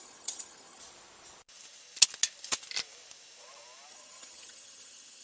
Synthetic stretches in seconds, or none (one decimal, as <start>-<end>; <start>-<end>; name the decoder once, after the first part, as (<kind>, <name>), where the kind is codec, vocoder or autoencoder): 0.0-0.8 (vocoder, HiFi-GAN); 3.9-5.2